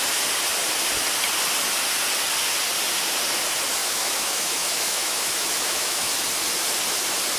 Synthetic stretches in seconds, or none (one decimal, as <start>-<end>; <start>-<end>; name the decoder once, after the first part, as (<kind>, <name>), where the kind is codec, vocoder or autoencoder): 3.8-6.1 (autoencoder, DAC-VAE)